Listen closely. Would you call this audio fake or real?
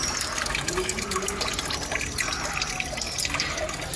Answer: real